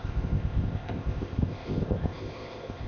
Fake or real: fake